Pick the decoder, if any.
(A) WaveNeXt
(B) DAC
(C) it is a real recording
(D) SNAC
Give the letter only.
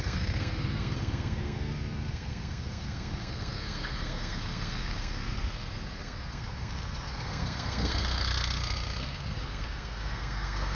D